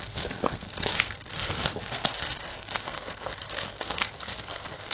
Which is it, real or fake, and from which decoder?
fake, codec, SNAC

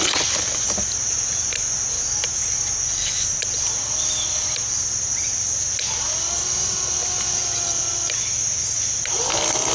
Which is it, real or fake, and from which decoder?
real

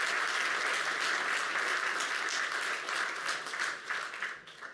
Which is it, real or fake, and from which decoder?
real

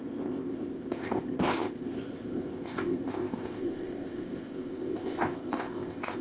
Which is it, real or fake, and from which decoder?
fake, codec, ZipCodec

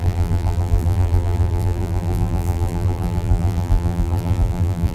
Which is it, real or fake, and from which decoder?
fake, vocoder, BigVGAN v2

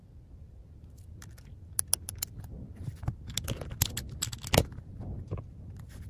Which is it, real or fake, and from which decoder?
real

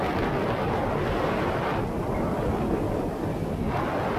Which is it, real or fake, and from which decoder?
real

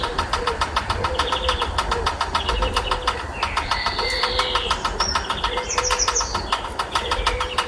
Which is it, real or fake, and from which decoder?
real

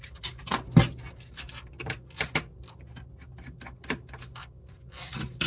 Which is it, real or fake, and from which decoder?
real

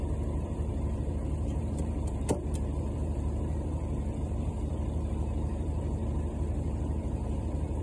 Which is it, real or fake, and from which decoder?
fake, vocoder, BigVGAN v2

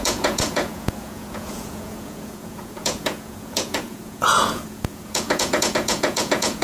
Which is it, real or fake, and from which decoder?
fake, vocoder, Vocos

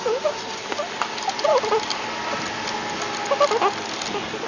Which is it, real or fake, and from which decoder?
real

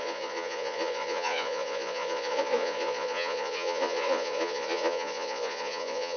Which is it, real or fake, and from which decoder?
fake, vocoder, Vocos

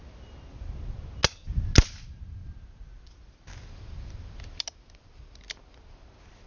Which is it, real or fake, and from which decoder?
real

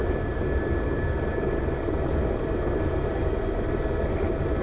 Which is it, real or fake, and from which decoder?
fake, vocoder, BigVGAN v2